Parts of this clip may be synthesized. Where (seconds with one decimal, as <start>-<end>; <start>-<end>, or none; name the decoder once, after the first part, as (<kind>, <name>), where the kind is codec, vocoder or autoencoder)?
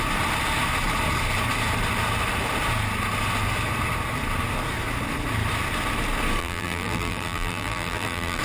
6.4-8.4 (vocoder, BigVGAN v2)